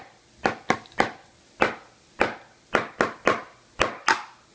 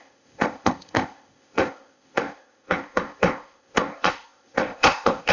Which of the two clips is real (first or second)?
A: first